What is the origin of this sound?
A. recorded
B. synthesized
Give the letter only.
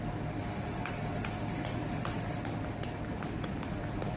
B